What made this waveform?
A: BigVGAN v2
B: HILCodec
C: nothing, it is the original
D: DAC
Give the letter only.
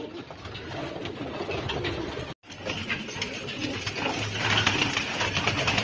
C